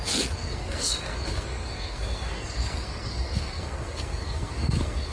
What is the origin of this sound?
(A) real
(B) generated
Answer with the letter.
B